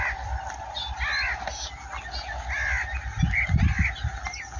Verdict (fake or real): real